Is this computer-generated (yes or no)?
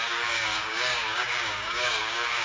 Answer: yes